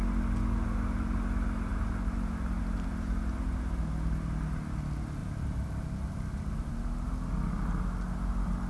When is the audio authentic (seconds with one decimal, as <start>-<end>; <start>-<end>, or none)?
0.0-5.2; 6.7-8.7